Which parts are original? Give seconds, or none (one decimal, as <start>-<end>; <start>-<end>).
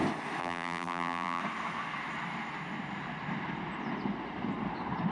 0.0-0.4; 1.4-5.1